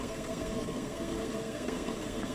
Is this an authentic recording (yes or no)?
no